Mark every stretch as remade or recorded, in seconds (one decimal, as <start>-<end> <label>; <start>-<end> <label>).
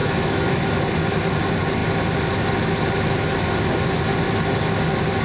0.0-0.6 remade; 0.6-5.2 recorded